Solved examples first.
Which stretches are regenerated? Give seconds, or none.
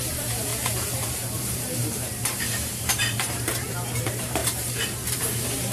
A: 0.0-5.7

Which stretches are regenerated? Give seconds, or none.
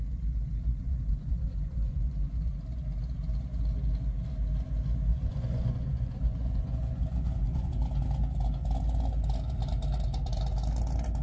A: 0.8-2.5; 5.1-7.7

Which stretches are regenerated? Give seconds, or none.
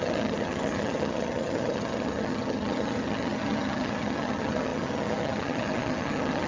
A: 0.0-6.5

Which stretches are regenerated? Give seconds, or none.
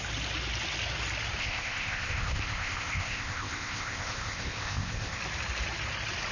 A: 1.4-5.2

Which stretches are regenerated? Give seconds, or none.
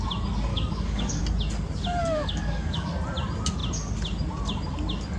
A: 0.5-1.2; 2.0-2.9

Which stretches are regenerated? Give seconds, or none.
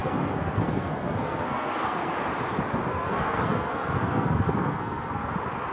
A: 0.0-2.1; 2.9-5.3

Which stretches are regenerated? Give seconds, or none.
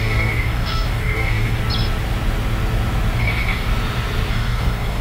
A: 0.0-1.6; 3.2-3.7; 4.3-5.0